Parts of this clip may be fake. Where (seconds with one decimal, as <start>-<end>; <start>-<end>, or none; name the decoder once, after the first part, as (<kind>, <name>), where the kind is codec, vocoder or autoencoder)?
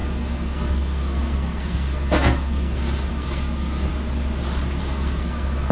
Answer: 0.0-3.9 (codec, SNAC); 4.8-5.7